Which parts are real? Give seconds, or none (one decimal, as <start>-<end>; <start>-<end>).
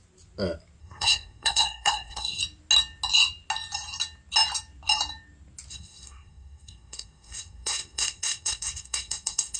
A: 0.0-0.8; 2.4-5.7